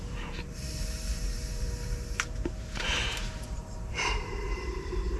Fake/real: fake